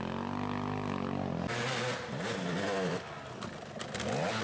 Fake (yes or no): no